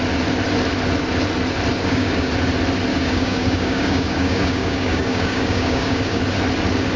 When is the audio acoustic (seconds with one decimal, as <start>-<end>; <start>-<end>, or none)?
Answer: 0.0-1.8; 2.3-2.9; 6.2-7.0